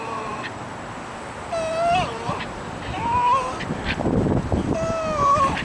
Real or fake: real